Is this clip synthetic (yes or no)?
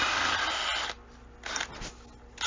no